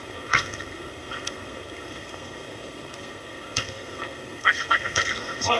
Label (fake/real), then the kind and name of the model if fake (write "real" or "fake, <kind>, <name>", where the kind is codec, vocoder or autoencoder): fake, codec, SNAC